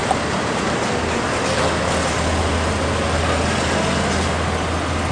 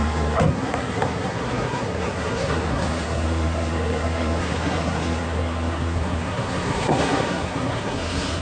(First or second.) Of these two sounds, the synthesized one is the second